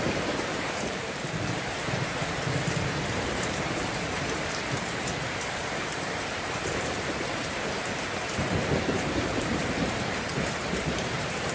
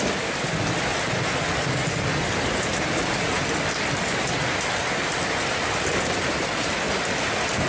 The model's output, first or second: first